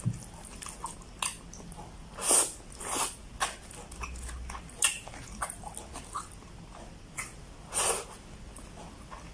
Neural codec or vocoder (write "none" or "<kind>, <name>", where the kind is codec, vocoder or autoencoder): none